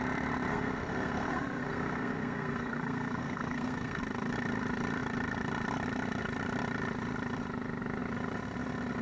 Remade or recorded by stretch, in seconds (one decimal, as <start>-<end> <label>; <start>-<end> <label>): 0.0-0.5 recorded; 0.5-4.0 remade; 4.0-9.0 recorded